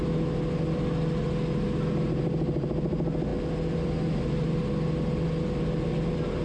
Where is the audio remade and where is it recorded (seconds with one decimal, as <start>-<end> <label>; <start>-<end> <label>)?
0.0-6.4 recorded